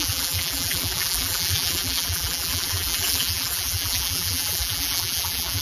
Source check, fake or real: fake